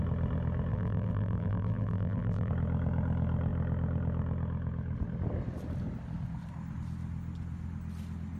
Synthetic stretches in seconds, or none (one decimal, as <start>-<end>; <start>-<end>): 0.7-2.5